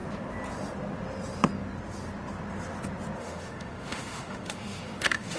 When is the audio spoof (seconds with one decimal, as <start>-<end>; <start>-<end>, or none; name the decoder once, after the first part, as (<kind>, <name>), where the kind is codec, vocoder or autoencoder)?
3.2-5.4 (autoencoder, DAC-VAE)